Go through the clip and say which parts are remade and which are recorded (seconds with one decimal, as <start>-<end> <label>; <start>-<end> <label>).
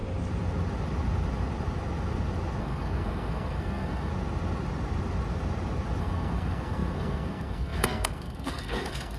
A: 0.0-2.6 recorded; 2.6-4.1 remade; 4.1-6.0 recorded; 6.0-9.2 remade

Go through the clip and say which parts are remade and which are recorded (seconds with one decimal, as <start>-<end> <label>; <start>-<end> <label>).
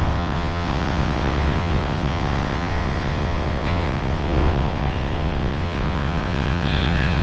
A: 0.0-7.2 remade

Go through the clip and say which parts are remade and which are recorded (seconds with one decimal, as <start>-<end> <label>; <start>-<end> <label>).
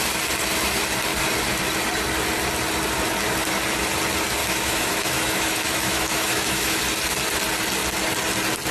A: 0.0-4.4 recorded; 4.4-6.8 remade; 6.8-8.7 recorded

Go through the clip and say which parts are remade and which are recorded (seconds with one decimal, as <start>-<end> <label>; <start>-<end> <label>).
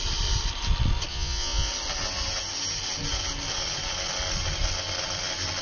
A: 0.0-1.1 recorded; 1.1-1.7 remade; 1.7-5.6 recorded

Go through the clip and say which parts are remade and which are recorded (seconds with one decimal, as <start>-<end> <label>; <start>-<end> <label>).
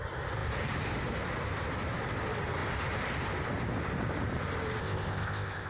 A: 0.0-4.8 recorded; 4.8-5.7 remade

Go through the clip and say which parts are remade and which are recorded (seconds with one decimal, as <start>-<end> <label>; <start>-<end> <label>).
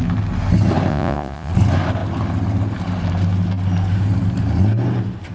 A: 0.0-0.9 recorded; 0.9-1.5 remade; 1.5-5.3 recorded